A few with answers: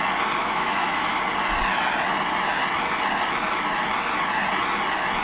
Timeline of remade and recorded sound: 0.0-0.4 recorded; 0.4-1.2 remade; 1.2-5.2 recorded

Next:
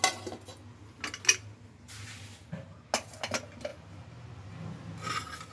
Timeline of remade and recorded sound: 0.0-5.5 recorded

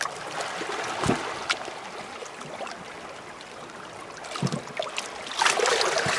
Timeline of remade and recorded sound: 0.0-2.2 recorded; 2.2-3.0 remade; 3.0-6.2 recorded

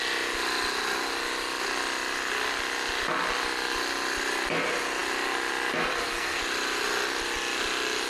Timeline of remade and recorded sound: 0.0-5.9 recorded; 5.9-6.4 remade; 6.4-8.1 recorded

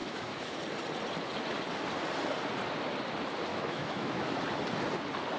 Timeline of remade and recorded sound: 0.0-0.6 remade; 0.6-3.5 recorded; 3.5-4.4 remade; 4.4-5.4 recorded

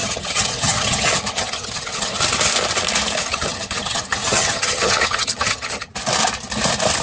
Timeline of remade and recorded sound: 0.0-2.2 remade; 2.2-3.3 recorded; 3.3-5.9 remade; 5.9-7.0 recorded

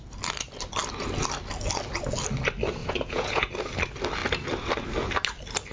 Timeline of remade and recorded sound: 0.0-2.8 recorded; 2.8-3.5 remade; 3.5-5.7 recorded

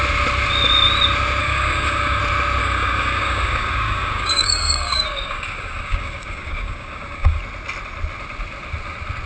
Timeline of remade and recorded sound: 0.0-1.4 recorded; 1.4-2.2 remade; 2.2-2.6 recorded; 2.6-7.4 remade; 7.4-9.3 recorded